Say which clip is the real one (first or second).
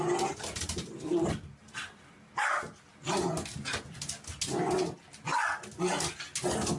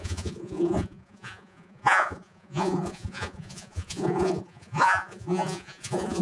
first